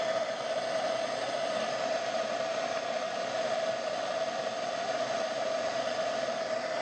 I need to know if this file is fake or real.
real